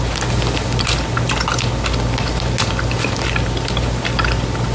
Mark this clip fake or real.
real